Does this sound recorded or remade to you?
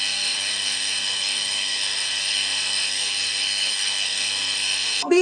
remade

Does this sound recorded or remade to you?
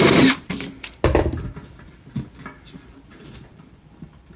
remade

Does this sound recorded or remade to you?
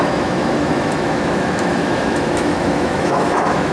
remade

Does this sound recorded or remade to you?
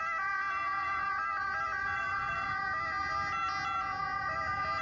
recorded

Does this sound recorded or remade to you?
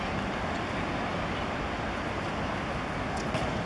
recorded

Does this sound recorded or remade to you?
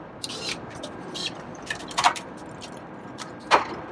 remade